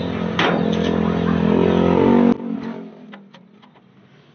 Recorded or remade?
recorded